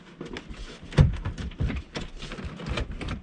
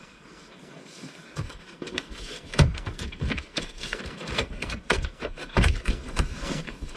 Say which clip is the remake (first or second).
second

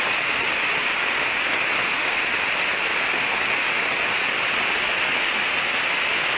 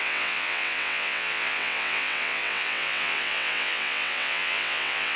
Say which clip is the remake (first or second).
second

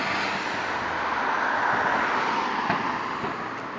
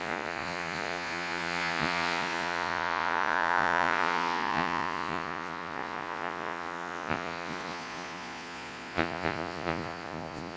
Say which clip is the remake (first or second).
second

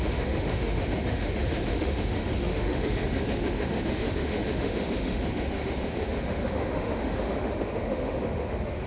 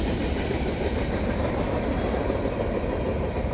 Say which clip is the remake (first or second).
first